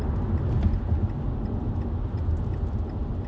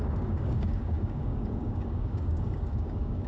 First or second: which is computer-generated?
second